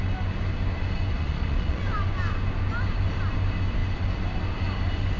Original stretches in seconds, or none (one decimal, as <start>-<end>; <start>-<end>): 0.0-1.1; 1.8-5.2